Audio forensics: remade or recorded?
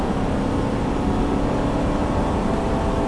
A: recorded